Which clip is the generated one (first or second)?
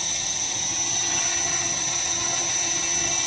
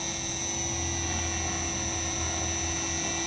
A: first